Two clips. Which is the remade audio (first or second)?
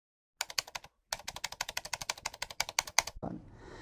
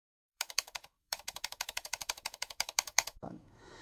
second